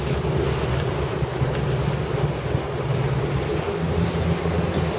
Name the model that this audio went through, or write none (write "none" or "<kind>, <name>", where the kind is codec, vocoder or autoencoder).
none